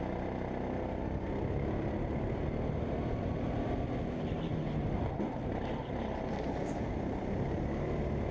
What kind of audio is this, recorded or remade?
recorded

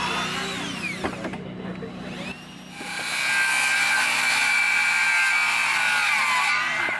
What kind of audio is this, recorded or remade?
recorded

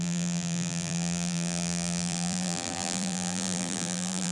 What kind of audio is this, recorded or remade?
remade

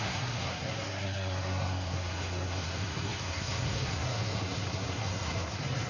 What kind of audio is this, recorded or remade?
remade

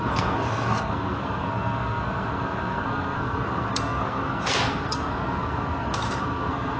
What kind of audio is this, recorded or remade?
remade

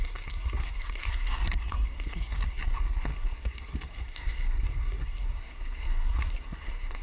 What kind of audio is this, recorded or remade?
remade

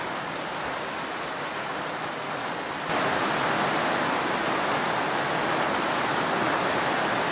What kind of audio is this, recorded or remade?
recorded